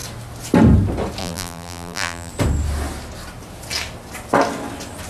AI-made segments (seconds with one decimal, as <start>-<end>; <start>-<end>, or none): 1.2-2.3